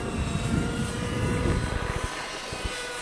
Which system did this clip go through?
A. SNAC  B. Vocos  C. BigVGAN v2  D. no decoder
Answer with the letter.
C